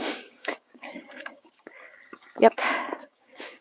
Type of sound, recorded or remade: remade